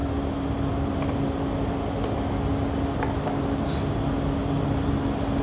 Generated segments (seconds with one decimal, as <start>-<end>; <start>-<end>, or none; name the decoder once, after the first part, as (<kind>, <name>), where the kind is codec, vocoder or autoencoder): none